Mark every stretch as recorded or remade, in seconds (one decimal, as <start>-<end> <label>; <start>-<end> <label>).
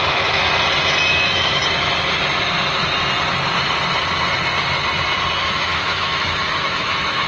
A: 0.0-0.4 remade; 0.4-1.1 recorded; 1.1-1.6 remade; 1.6-5.4 recorded; 5.4-7.3 remade